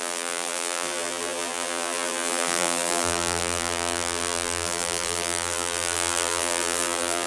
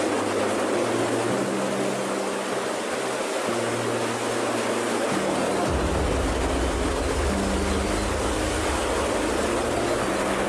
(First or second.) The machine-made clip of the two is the first